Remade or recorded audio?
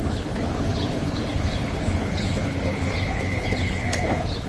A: remade